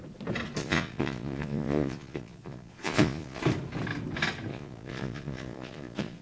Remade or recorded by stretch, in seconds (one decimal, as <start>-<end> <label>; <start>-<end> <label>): 0.0-0.6 recorded; 0.6-3.4 remade; 3.4-4.5 recorded; 4.5-6.2 remade